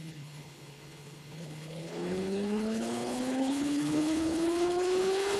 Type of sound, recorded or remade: remade